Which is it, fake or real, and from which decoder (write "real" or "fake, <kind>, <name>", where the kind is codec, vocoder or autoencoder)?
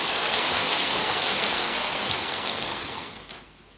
fake, codec, SNAC